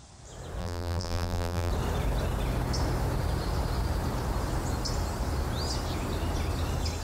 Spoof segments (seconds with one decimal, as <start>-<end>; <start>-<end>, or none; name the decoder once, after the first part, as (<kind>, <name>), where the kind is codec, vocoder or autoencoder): 0.6-1.7 (vocoder, BigVGAN v2)